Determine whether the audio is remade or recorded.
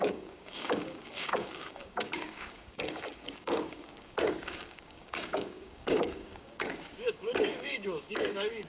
remade